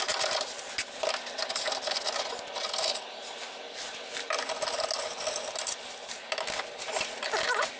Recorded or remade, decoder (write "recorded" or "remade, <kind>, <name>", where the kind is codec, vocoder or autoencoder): recorded